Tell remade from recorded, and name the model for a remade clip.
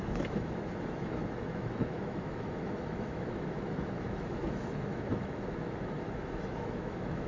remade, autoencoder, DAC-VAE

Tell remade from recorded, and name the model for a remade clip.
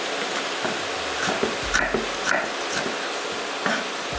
recorded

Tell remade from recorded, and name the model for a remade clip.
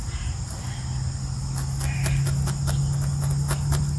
recorded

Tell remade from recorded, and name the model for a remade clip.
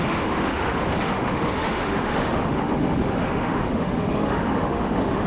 remade, autoencoder, DAC-VAE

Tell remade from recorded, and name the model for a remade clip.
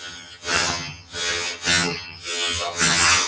remade, vocoder, HiFi-GAN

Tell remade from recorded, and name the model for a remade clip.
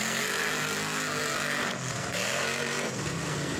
remade, codec, SNAC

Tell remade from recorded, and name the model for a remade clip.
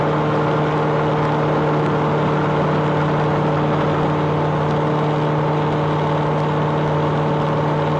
recorded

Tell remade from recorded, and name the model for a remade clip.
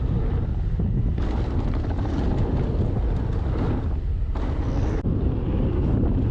recorded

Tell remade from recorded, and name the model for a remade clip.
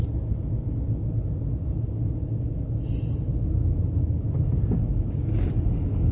recorded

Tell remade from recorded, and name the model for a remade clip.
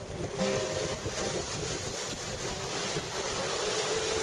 recorded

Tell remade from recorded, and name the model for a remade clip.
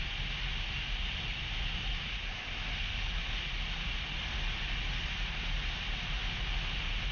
recorded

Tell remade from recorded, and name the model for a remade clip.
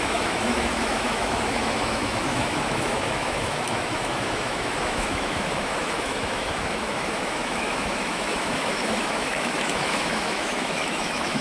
remade, autoencoder, DAC-VAE